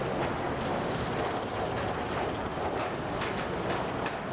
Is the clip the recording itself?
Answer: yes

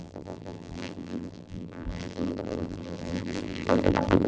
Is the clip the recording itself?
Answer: no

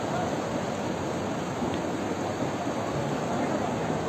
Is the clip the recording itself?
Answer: yes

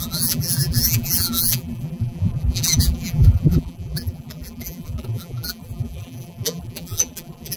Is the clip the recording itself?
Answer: no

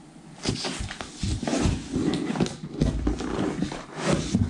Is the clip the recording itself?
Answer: yes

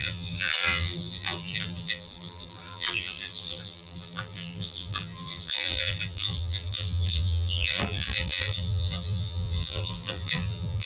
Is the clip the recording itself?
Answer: no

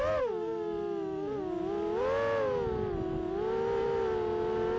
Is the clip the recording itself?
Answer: yes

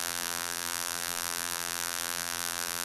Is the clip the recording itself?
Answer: no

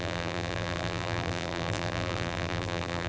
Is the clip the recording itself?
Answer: no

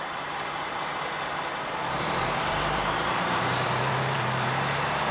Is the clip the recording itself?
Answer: no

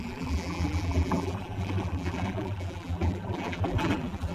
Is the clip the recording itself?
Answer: no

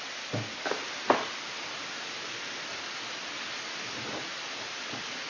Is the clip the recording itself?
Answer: yes